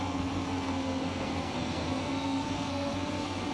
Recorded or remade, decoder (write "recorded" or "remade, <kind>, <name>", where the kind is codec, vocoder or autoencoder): remade, codec, SNAC